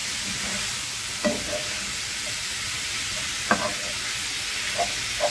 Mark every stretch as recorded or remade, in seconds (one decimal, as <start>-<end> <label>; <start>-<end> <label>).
0.0-3.7 remade; 3.7-5.3 recorded